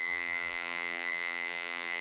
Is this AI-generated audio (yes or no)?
yes